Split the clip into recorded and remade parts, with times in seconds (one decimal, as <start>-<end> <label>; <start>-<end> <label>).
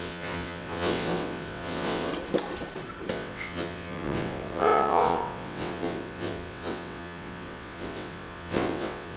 0.0-2.1 remade; 2.1-3.1 recorded; 3.1-9.2 remade